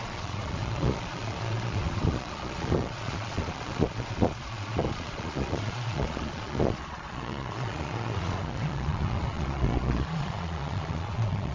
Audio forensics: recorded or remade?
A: remade